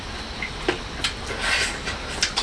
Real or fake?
real